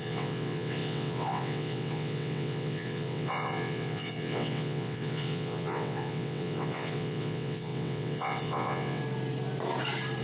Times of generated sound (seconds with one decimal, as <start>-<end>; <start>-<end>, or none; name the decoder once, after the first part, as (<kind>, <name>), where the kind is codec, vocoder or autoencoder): 0.0-9.0 (vocoder, WaveNeXt)